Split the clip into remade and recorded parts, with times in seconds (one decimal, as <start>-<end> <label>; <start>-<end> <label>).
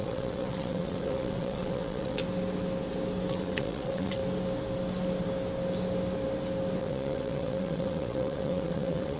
0.0-2.2 remade; 2.2-3.3 recorded; 3.3-4.2 remade; 4.2-6.8 recorded; 6.8-9.2 remade